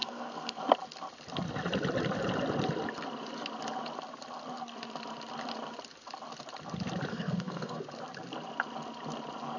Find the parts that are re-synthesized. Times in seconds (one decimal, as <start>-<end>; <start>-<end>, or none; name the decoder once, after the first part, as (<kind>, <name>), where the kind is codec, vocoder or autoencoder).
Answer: 0.0-0.6 (codec, SNAC); 7.1-7.8